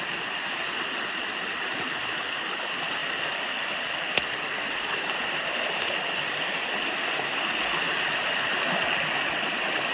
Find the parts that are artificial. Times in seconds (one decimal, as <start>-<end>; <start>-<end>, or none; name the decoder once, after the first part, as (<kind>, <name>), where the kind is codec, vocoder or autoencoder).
3.0-5.5 (vocoder, BigVGAN v2)